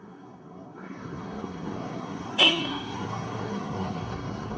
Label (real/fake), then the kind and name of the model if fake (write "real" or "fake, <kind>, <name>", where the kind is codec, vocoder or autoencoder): fake, codec, SNAC